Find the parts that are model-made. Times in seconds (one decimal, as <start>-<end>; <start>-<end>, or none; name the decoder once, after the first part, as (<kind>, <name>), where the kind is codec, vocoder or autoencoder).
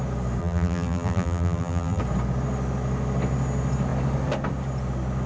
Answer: 0.4-2.0 (vocoder, BigVGAN v2)